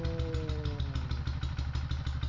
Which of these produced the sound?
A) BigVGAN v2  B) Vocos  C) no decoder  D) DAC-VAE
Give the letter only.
C